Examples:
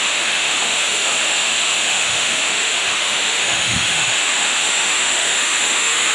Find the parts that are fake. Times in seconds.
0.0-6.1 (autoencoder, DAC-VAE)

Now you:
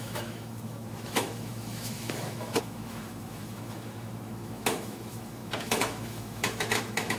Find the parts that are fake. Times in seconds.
0.0-7.2 (autoencoder, DAC-VAE)

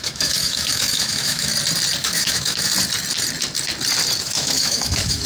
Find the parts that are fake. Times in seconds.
0.0-1.5 (autoencoder, DAC-VAE); 2.0-2.7; 4.2-5.3

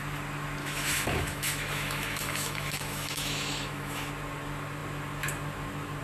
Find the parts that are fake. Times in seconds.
0.6-4.1 (autoencoder, DAC-VAE)

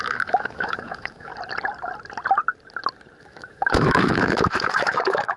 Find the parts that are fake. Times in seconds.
0.0-1.3 (autoencoder, DAC-VAE); 3.2-5.4

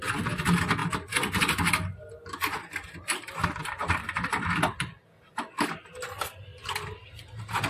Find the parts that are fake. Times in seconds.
none

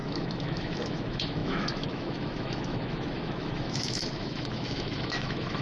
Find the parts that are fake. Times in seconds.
0.0-5.6 (autoencoder, DAC-VAE)

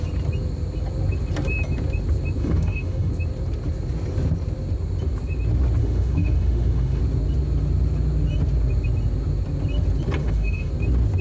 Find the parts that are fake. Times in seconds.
2.4-3.1 (autoencoder, DAC-VAE); 5.8-7.0; 10.2-10.7